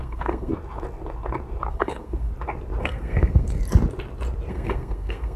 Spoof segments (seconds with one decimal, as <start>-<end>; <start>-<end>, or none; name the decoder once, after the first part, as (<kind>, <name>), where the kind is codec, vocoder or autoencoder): 0.0-0.5 (codec, SNAC); 1.7-2.3; 2.8-3.6; 4.5-5.4